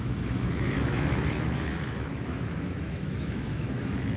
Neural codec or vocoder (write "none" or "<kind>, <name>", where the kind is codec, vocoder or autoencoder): autoencoder, DAC-VAE